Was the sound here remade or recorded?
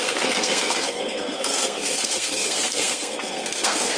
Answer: remade